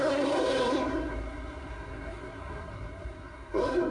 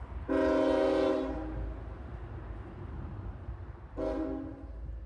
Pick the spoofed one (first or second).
first